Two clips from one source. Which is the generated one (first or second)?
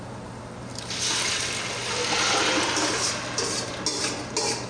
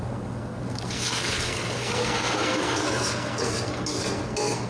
second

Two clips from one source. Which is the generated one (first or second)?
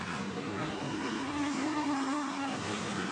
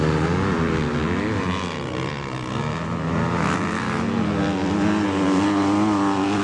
first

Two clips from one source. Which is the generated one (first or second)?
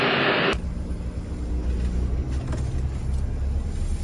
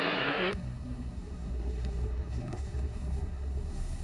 second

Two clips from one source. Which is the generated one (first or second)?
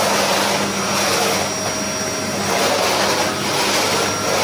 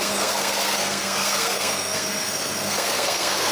second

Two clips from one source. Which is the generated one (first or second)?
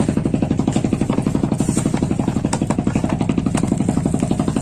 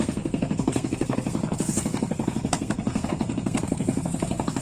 second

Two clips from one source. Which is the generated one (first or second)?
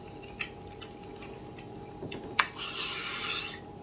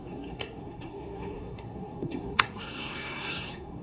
second